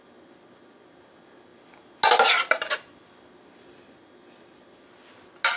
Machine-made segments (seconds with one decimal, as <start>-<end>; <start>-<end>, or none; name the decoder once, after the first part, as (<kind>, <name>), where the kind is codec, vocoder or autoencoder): none